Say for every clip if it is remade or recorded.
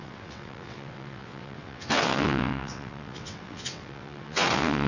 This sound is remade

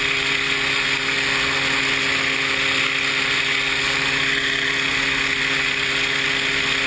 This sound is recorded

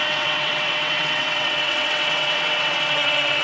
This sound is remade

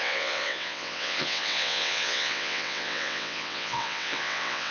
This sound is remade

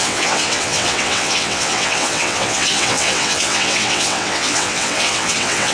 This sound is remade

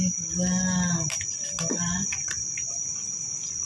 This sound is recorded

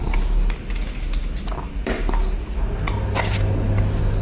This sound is recorded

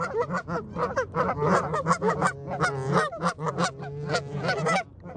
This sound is recorded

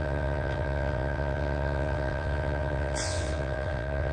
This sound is remade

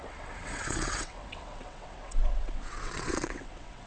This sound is remade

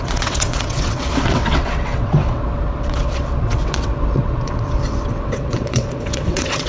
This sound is remade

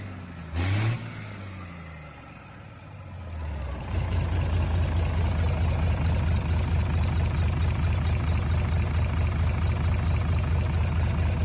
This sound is recorded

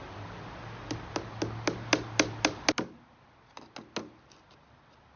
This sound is recorded